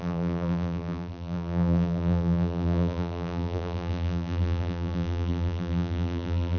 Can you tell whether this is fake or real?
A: fake